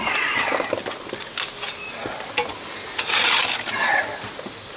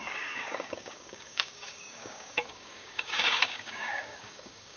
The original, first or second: first